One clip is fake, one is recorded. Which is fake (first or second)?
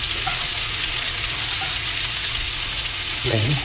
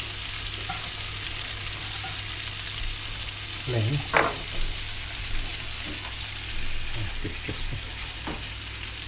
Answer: first